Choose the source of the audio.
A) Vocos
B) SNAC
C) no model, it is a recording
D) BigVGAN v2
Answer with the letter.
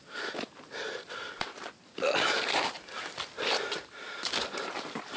C